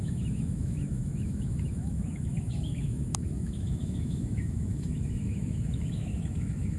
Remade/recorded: remade